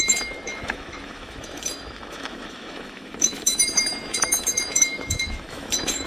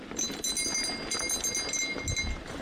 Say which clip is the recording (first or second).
second